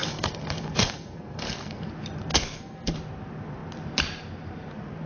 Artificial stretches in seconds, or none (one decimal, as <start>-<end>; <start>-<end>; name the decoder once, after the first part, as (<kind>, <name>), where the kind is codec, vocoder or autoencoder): 0.0-1.9 (codec, SNAC); 2.3-2.9